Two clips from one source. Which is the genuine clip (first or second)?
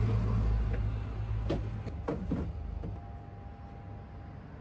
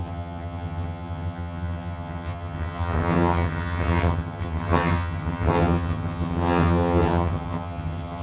first